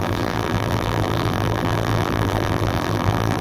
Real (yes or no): no